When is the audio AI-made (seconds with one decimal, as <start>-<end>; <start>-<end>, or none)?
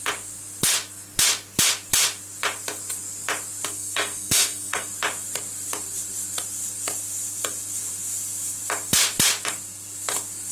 3.7-4.9